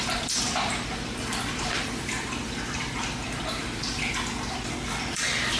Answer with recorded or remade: remade